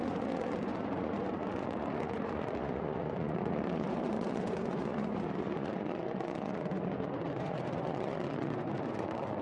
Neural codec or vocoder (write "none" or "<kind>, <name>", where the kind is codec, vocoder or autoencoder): vocoder, Vocos